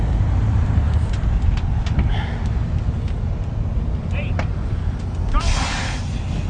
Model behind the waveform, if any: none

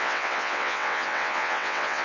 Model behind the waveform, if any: vocoder, WaveNeXt